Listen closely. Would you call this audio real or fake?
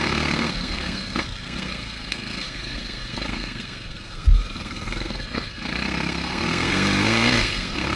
fake